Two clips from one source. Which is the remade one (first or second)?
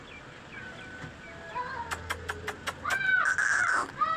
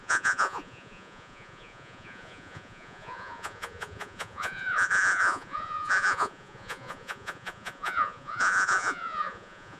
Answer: second